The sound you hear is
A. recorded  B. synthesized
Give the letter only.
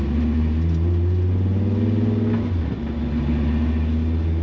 A